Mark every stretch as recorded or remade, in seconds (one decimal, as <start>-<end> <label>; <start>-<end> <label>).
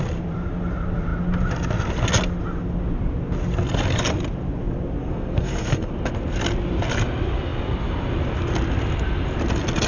0.0-5.0 recorded; 5.0-5.9 remade; 5.9-9.9 recorded